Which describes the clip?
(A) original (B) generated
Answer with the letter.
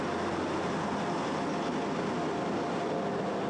A